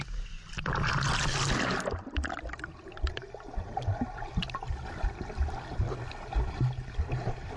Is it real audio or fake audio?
real